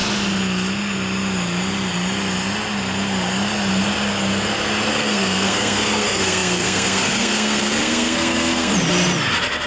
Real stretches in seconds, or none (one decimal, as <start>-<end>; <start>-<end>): 0.0-4.9; 8.7-9.7